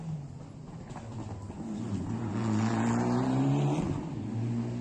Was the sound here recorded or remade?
recorded